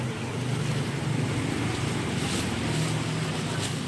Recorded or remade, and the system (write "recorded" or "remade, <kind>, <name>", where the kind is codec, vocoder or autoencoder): recorded